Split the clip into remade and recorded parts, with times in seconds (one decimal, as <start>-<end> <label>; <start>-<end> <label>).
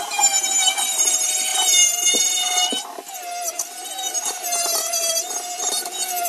0.0-6.3 recorded